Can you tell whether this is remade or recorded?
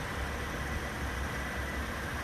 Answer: recorded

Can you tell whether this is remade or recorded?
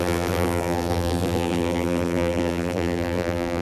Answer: remade